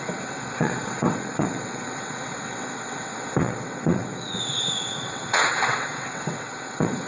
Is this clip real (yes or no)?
no